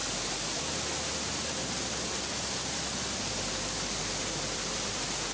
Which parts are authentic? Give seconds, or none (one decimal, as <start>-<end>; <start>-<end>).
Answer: 0.0-1.9